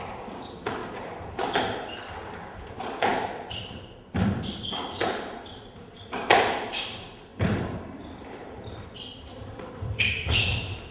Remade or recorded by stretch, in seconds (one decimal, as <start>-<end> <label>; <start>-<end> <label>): 0.0-0.8 remade; 0.8-1.6 recorded; 1.6-3.1 remade; 3.1-4.7 recorded; 4.7-10.9 remade